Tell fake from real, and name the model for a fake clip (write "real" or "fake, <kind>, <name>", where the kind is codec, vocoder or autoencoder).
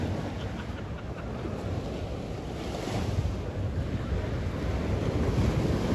real